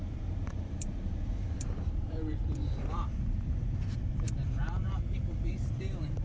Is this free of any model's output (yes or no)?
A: no